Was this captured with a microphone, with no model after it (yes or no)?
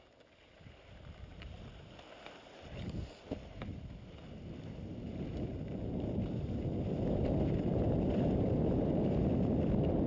yes